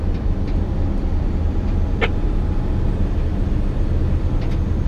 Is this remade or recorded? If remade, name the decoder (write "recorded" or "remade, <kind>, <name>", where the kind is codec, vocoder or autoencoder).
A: recorded